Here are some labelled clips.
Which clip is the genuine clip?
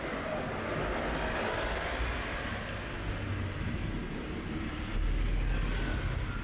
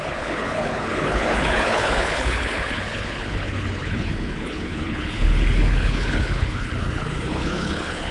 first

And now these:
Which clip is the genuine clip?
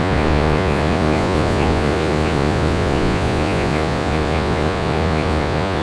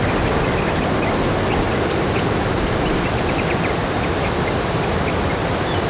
second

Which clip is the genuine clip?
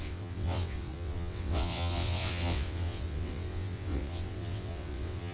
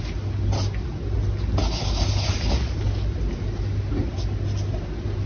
second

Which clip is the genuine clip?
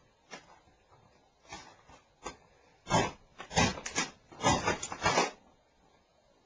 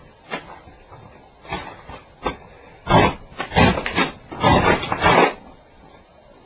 first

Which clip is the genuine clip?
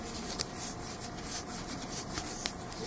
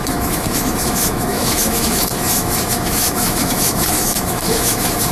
first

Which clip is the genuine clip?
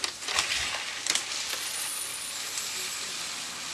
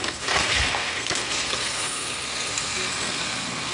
first